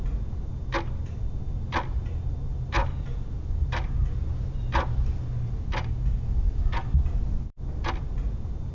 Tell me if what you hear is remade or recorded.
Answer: recorded